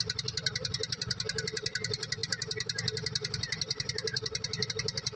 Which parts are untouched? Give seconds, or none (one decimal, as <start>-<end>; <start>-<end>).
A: 0.0-5.2